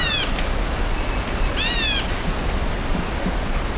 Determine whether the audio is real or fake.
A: real